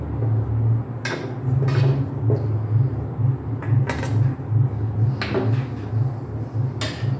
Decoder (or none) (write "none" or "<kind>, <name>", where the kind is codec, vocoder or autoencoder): none